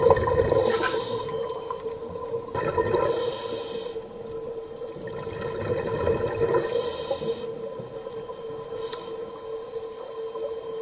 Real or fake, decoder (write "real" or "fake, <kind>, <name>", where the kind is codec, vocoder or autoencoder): real